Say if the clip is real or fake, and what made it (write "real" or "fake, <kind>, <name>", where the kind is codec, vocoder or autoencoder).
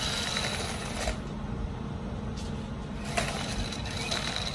real